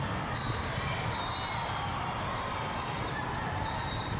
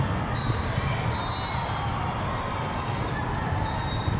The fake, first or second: first